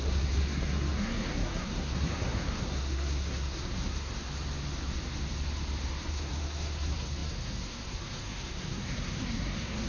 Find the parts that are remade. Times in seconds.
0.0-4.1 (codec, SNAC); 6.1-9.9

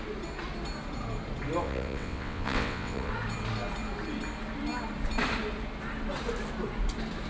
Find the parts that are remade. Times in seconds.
1.6-3.1 (vocoder, WaveNeXt)

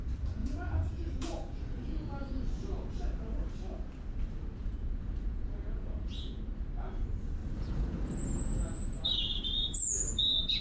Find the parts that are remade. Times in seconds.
0.4-2.4 (vocoder, Vocos); 4.6-6.4; 7.4-10.6